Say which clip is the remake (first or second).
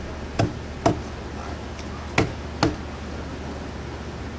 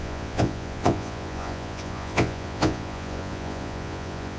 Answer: second